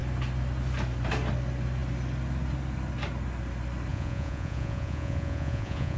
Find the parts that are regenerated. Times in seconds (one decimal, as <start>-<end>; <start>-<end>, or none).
3.9-6.0